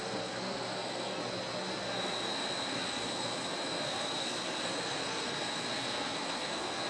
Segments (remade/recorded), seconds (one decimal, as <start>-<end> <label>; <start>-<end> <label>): 0.0-1.2 remade; 1.2-1.8 recorded; 1.8-6.9 remade